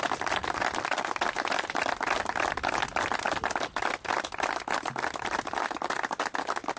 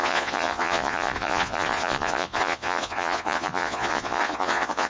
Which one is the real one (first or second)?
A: first